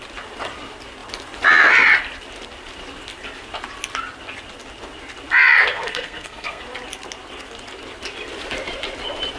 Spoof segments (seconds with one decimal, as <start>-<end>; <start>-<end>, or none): 5.7-6.6